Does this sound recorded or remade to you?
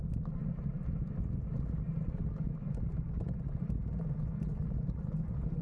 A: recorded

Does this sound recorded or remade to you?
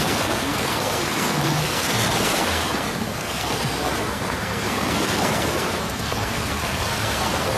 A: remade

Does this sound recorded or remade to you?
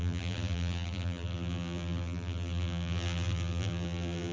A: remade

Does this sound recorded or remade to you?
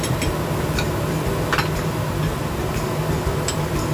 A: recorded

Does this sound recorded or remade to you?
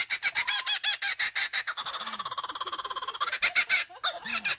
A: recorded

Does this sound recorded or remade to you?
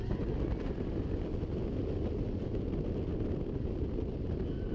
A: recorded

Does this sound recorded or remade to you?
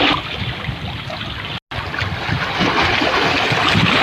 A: recorded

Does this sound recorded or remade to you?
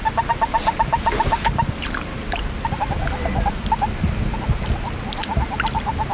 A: recorded